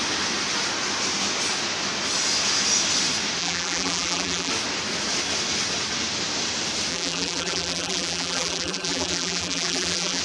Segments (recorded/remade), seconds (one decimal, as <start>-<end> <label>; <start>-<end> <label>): 0.0-3.4 recorded; 3.4-4.5 remade; 4.5-6.9 recorded; 6.9-10.2 remade